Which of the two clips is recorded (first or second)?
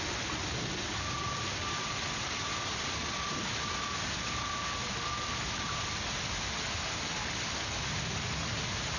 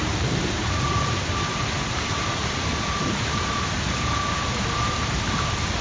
first